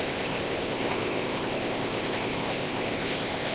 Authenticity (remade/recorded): remade